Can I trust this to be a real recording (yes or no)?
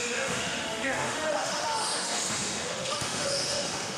no